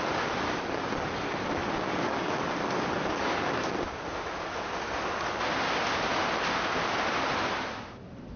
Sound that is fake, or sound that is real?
real